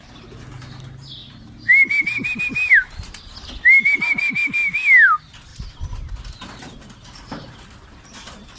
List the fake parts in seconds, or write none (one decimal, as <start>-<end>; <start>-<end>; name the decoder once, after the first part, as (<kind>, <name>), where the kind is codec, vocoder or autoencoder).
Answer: 5.5-6.1 (vocoder, BigVGAN v2)